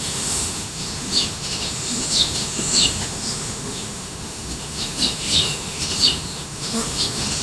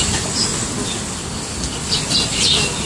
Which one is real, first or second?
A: second